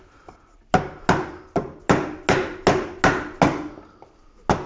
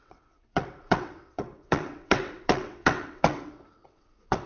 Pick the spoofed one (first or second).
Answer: second